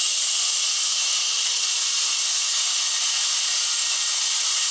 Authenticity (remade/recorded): recorded